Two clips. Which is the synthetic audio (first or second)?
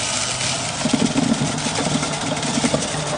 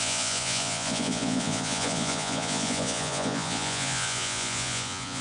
second